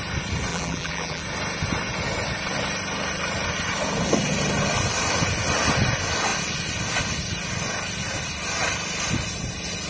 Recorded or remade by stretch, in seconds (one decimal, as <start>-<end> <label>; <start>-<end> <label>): 0.0-0.5 recorded; 0.5-1.2 remade; 1.2-9.9 recorded